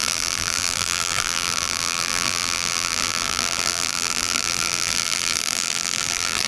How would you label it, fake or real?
fake